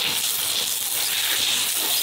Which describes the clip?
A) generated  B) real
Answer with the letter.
B